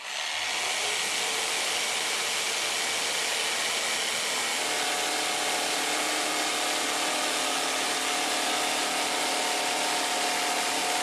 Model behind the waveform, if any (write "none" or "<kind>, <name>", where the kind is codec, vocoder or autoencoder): none